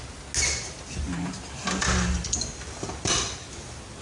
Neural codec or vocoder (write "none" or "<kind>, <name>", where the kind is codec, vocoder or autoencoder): none